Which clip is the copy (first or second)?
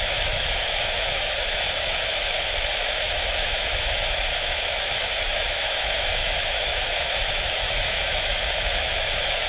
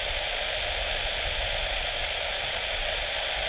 first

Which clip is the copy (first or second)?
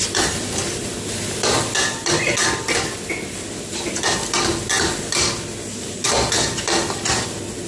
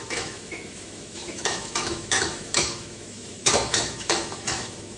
second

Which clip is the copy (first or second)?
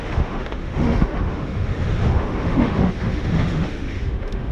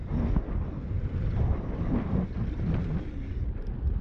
first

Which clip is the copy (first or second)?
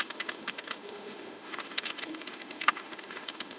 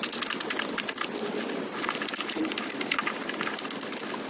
first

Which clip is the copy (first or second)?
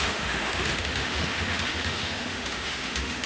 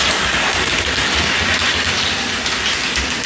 first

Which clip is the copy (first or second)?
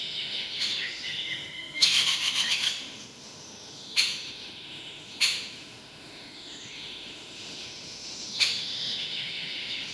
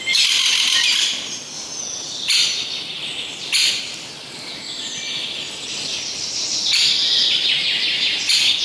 first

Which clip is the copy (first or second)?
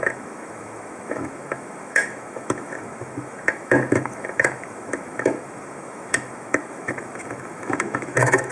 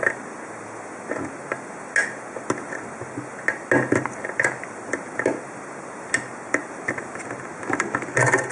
first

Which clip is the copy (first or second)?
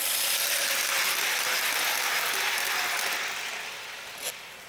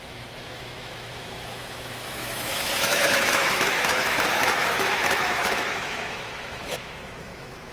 second